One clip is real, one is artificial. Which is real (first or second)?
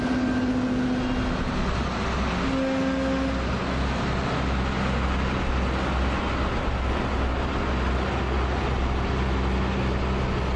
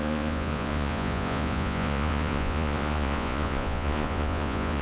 first